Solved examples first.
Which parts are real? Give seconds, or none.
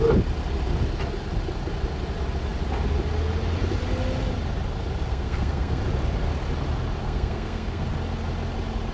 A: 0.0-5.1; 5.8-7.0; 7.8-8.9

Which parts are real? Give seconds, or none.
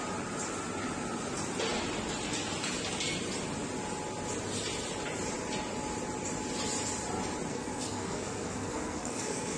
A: 0.0-7.5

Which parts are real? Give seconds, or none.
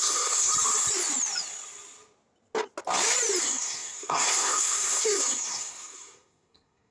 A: 0.5-3.4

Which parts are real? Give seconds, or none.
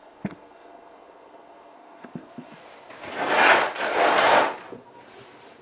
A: 2.6-5.6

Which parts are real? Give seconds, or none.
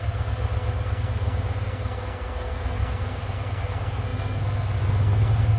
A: none